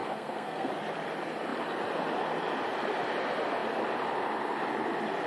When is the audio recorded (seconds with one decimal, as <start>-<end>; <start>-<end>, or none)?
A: 0.7-5.3